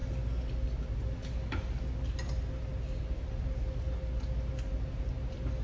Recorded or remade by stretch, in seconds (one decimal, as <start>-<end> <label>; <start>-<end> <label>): 0.0-5.6 recorded